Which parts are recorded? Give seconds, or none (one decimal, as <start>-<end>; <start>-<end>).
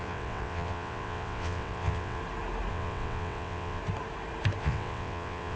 2.2-2.7; 3.8-4.6